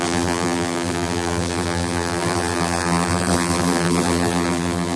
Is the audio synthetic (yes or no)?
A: yes